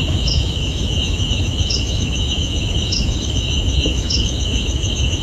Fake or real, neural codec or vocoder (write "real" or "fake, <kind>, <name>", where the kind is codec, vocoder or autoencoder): fake, autoencoder, DAC-VAE